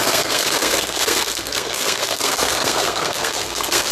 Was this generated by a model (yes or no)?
yes